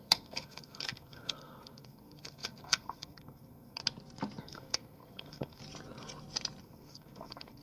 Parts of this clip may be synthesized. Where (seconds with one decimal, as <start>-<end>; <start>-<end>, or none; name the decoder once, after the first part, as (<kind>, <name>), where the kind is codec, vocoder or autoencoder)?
0.0-3.8 (codec, SNAC); 4.4-5.6; 6.6-7.6